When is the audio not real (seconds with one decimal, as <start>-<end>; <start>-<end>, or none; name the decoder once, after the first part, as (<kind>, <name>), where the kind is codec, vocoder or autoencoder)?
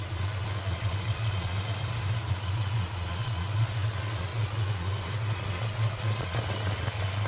0.0-1.8 (vocoder, Vocos); 2.3-7.3